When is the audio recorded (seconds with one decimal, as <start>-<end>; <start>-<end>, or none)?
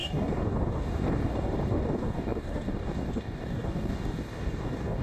none